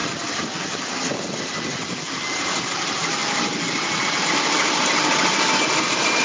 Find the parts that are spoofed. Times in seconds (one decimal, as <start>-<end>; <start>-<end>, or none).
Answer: none